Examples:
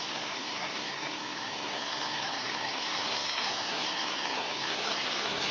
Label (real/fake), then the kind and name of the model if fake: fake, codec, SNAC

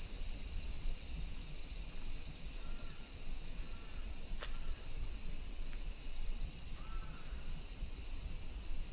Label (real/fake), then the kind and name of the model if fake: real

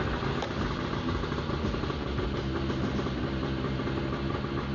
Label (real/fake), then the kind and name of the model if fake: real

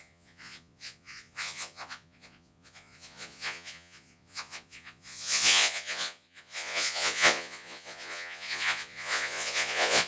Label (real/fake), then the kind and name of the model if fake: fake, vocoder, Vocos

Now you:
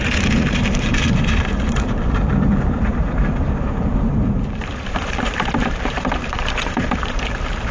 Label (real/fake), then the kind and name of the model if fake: fake, vocoder, BigVGAN v2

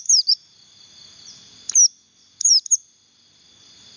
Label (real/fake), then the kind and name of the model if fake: real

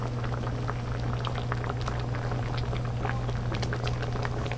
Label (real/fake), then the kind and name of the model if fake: real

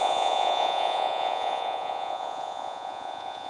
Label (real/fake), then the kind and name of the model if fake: fake, vocoder, Vocos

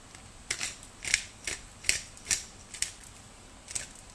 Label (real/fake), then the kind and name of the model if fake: real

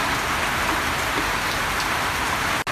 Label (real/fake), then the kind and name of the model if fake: real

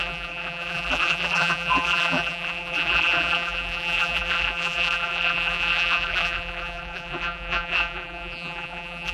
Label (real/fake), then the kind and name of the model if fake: fake, vocoder, BigVGAN v2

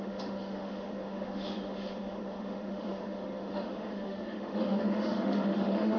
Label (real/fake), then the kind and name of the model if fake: fake, autoencoder, DAC-VAE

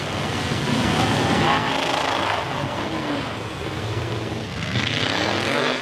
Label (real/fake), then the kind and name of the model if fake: fake, codec, SNAC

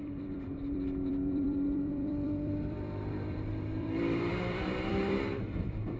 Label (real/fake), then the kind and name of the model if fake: fake, vocoder, BigVGAN v2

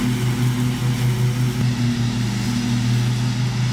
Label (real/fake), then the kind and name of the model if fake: real